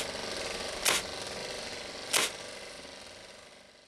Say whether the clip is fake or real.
real